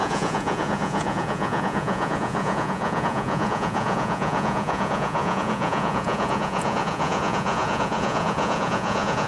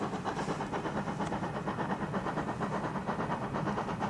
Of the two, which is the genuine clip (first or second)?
second